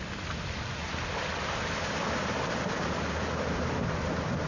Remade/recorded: recorded